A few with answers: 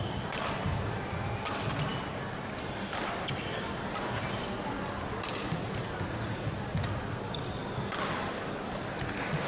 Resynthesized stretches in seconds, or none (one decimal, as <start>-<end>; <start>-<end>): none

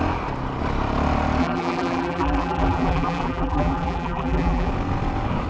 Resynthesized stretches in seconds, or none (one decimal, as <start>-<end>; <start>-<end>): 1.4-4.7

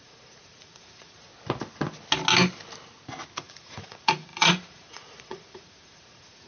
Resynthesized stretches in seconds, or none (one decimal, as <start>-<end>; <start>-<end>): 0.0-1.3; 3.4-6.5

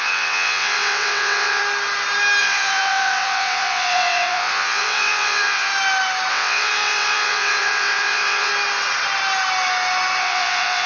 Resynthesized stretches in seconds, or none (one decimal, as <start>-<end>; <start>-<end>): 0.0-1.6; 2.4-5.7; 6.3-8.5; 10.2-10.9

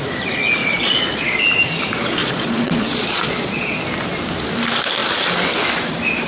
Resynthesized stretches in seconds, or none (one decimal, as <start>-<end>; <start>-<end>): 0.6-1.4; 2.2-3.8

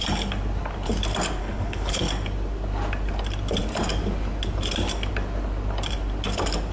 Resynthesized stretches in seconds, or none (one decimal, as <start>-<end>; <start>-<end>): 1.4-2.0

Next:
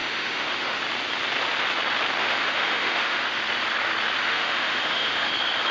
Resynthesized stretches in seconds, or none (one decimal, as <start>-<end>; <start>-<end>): 0.0-0.8; 2.2-3.4; 4.3-5.3

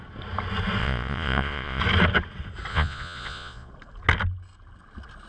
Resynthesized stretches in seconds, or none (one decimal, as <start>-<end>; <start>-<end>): 0.8-1.8; 2.7-3.7